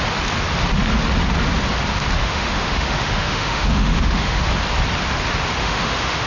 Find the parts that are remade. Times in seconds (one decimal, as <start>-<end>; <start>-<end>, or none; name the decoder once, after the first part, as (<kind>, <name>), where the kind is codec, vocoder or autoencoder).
2.2-4.5 (autoencoder, DAC-VAE); 5.6-6.3